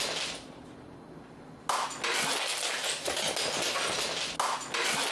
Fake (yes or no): no